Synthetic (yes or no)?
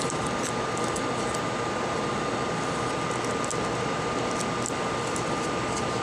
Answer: no